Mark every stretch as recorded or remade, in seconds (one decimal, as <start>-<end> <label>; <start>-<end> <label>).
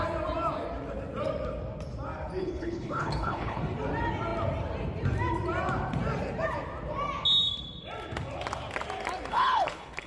0.0-2.4 recorded; 2.4-3.6 remade; 3.6-9.3 recorded; 9.3-10.1 remade